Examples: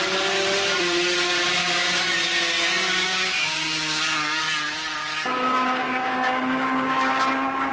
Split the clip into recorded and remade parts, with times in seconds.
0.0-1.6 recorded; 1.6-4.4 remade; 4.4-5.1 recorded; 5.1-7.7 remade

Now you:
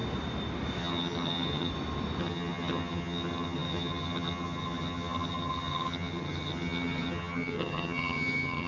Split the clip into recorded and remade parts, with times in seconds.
0.0-0.8 recorded; 0.8-1.7 remade; 1.7-2.2 recorded; 2.2-8.7 remade

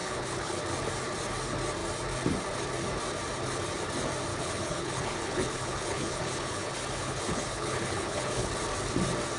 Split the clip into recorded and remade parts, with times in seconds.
0.0-0.6 remade; 0.6-4.3 recorded; 4.3-8.5 remade; 8.5-9.4 recorded